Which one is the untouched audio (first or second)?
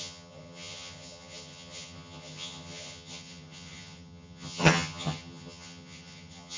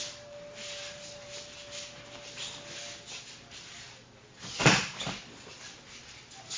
second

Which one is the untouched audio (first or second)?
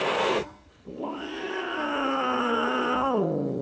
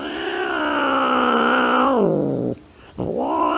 second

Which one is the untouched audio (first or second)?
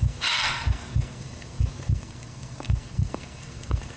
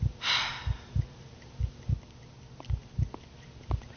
second